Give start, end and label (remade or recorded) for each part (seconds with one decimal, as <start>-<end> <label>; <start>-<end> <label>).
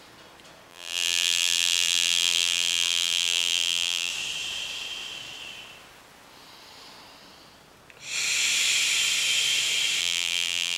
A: 0.0-0.7 recorded; 0.7-4.1 remade; 4.1-10.0 recorded; 10.0-10.8 remade